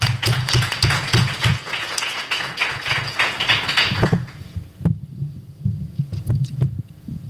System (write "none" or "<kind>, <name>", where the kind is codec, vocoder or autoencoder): vocoder, Vocos